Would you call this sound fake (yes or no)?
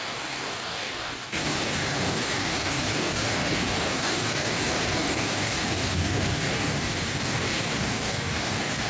yes